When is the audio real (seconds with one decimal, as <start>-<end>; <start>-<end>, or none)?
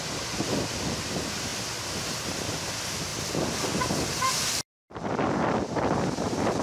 1.5-2.0; 3.1-4.7